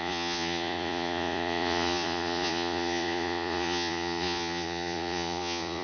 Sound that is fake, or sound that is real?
fake